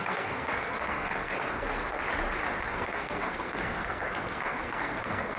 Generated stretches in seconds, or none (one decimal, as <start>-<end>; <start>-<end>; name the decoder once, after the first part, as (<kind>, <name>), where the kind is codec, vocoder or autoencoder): 0.0-2.0 (codec, SNAC); 2.6-5.4